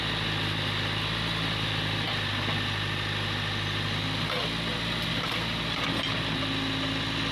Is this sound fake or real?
real